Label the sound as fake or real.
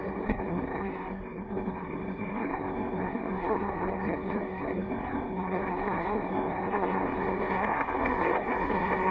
fake